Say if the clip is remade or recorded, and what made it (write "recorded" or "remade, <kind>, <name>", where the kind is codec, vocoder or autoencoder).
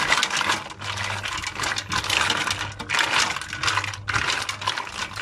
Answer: recorded